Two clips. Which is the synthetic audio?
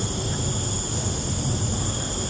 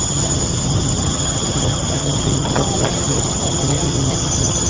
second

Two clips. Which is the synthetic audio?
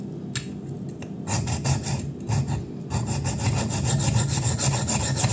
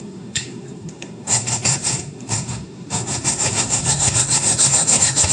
second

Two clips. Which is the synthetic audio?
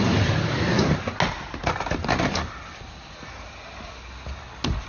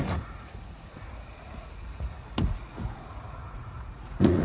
second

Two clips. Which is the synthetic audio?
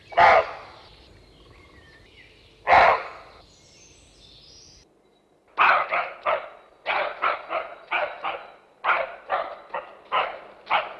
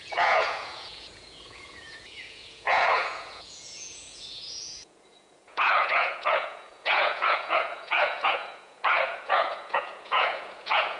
second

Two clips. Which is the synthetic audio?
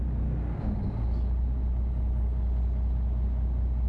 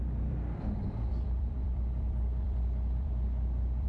second